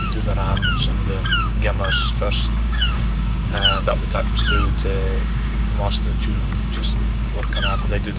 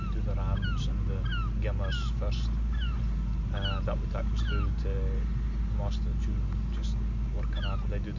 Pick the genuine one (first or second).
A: second